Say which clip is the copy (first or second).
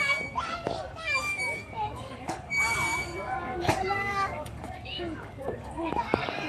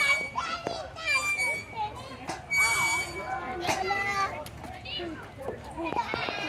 first